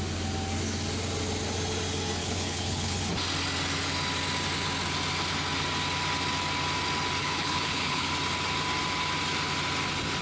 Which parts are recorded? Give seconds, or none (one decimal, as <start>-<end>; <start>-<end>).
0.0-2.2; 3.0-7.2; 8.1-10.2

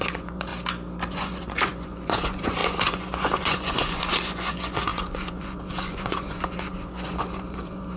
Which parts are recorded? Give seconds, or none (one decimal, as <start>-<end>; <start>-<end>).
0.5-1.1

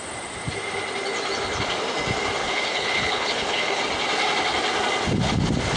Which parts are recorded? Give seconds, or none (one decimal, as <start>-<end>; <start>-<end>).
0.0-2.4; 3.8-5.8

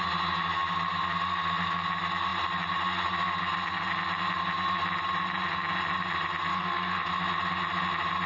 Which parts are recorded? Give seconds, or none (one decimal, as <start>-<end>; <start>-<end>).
0.0-6.5; 7.1-8.3

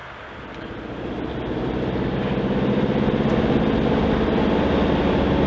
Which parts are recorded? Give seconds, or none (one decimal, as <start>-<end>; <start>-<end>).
0.0-5.5